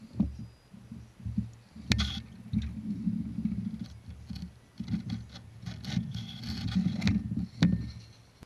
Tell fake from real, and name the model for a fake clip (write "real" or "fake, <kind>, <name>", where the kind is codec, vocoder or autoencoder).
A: real